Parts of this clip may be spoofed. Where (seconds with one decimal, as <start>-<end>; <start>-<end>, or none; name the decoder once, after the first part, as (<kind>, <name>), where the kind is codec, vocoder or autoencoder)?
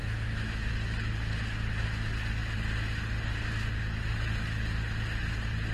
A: 0.0-0.7 (autoencoder, DAC-VAE)